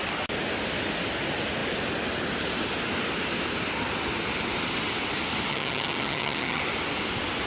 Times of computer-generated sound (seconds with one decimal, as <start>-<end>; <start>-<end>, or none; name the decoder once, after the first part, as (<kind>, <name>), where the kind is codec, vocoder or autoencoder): 5.5-6.6 (vocoder, HiFi-GAN)